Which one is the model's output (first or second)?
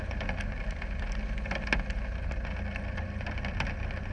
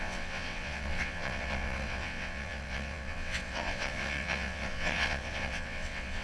second